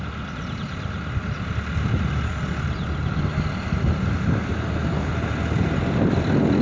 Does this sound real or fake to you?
real